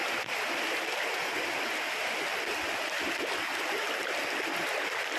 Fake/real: real